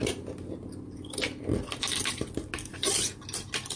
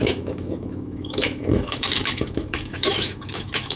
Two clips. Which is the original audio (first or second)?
first